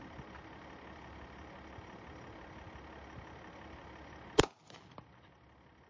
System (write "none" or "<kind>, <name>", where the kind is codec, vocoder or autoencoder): none